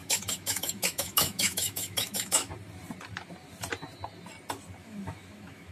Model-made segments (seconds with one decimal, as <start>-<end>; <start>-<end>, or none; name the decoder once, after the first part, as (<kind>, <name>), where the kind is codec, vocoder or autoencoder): 0.0-2.5 (autoencoder, DAC-VAE); 4.8-5.7